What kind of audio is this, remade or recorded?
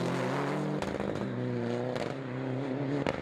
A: recorded